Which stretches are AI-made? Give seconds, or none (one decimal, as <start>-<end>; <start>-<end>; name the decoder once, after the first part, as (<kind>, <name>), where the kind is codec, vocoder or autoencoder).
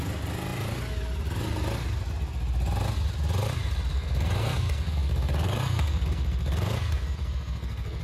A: 3.9-8.0 (codec, SNAC)